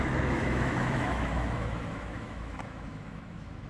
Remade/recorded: remade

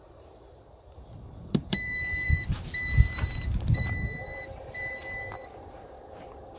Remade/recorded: remade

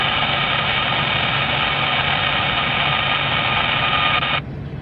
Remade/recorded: recorded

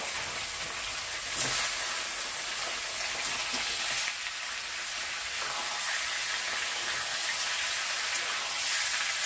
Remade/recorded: recorded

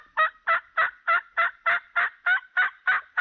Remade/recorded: recorded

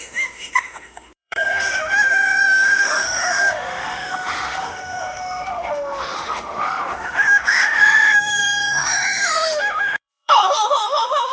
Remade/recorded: remade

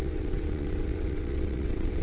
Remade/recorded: remade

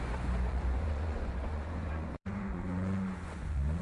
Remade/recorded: remade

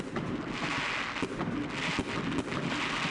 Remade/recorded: recorded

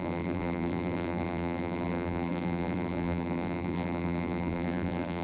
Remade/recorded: remade